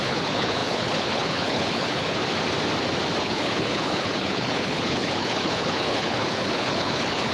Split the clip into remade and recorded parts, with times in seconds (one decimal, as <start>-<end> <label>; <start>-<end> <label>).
0.0-2.2 remade; 2.2-3.2 recorded; 3.2-7.3 remade